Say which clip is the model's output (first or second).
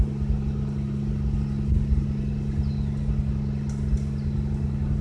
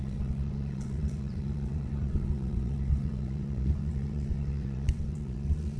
second